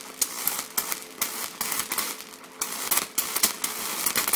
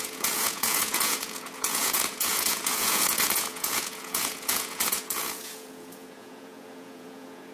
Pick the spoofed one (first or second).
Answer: second